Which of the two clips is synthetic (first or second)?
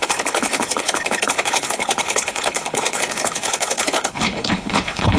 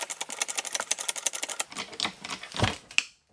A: first